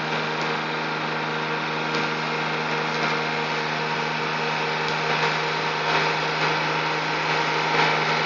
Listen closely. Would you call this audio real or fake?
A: real